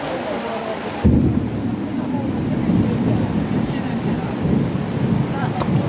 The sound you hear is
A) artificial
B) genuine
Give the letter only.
B